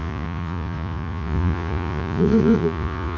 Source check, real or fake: fake